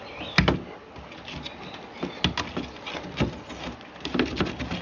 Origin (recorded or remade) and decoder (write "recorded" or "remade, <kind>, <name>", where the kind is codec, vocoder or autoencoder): recorded